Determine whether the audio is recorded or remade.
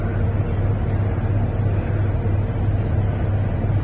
recorded